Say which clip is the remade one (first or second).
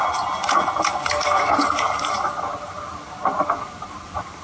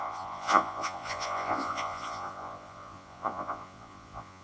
second